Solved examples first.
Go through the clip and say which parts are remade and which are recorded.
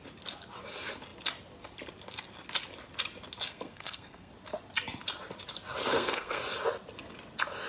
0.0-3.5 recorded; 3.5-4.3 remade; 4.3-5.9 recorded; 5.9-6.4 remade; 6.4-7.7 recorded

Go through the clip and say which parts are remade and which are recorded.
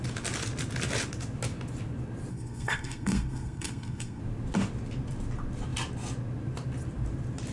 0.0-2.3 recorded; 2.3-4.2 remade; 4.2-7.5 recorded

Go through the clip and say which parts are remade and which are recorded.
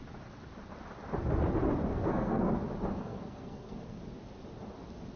0.0-1.9 recorded; 1.9-2.5 remade; 2.5-2.9 recorded; 2.9-4.0 remade; 4.0-5.2 recorded